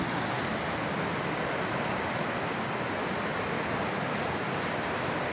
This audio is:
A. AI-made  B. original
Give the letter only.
A